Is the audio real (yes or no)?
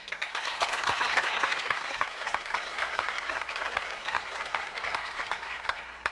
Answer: no